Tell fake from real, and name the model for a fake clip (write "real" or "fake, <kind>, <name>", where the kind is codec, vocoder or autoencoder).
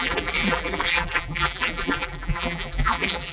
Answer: fake, vocoder, BigVGAN v2